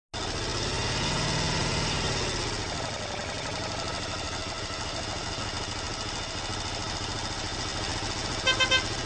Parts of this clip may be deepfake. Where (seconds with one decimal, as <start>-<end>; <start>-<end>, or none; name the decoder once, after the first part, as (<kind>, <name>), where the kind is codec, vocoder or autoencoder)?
none